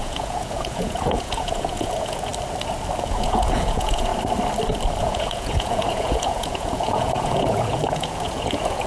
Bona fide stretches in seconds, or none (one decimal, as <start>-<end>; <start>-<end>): 2.3-3.0; 4.1-5.0